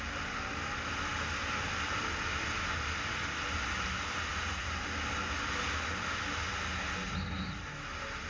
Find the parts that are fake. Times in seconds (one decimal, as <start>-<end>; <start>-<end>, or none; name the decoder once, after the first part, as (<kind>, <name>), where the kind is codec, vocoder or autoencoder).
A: none